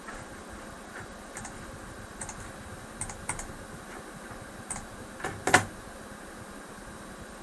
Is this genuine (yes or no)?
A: yes